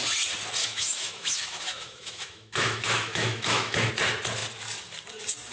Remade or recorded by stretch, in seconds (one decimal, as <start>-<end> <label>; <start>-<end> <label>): 0.0-0.6 recorded; 0.6-3.9 remade; 3.9-5.5 recorded